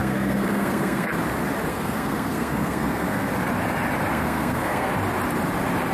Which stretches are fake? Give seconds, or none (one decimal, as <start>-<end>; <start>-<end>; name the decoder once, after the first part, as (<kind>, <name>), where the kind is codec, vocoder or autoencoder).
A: 0.0-1.1 (codec, SNAC); 1.7-3.3; 4.1-4.9